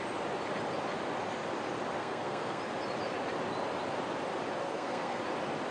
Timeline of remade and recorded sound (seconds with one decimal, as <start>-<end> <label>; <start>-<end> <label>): 0.0-2.0 recorded; 2.0-2.6 remade; 2.6-4.6 recorded; 4.6-5.2 remade; 5.2-5.7 recorded